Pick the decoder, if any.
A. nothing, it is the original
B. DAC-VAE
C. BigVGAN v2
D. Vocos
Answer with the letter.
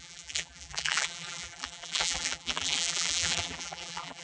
C